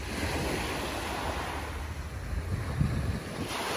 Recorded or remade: recorded